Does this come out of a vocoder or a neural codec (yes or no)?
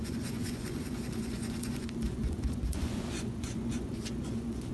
yes